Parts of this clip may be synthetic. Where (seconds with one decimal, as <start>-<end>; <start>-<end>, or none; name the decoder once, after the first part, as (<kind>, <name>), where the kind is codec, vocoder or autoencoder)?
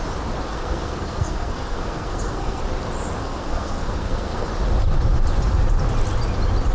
0.5-2.6 (codec, SNAC); 3.2-4.5